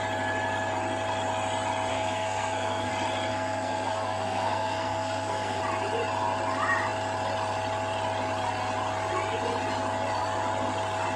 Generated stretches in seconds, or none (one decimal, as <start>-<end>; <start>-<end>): 1.9-2.9; 3.3-5.6